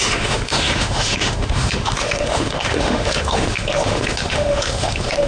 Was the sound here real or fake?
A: fake